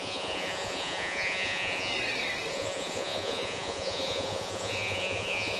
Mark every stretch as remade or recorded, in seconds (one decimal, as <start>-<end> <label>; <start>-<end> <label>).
0.0-1.9 remade; 1.9-2.5 recorded; 2.5-5.6 remade